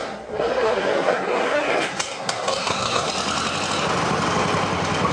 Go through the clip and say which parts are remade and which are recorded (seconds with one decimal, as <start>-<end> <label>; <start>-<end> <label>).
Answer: 0.0-3.1 remade; 3.1-5.1 recorded